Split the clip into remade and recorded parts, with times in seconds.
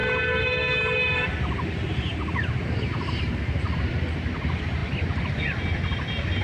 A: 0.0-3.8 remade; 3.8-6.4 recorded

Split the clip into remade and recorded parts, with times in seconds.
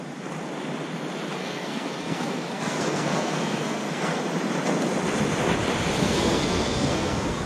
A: 0.0-1.4 recorded; 1.4-4.2 remade; 4.2-6.0 recorded; 6.0-7.5 remade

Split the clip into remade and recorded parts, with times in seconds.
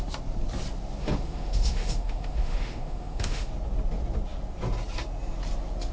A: 0.0-1.0 recorded; 1.0-3.5 remade; 3.5-5.9 recorded